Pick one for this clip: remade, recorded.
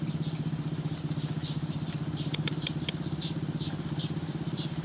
remade